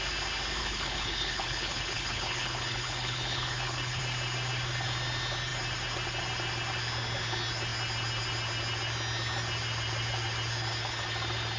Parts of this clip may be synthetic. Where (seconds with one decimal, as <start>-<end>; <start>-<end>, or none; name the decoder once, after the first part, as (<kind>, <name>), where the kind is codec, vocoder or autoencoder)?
0.6-4.0 (codec, HILCodec)